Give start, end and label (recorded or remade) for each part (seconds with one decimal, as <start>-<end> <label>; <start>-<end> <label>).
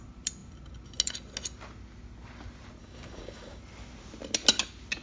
0.0-2.8 recorded; 2.8-3.6 remade; 3.6-5.0 recorded